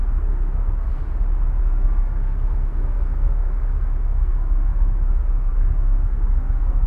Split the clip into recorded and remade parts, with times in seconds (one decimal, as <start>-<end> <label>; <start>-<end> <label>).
0.0-1.0 remade; 1.0-1.6 recorded; 1.6-6.9 remade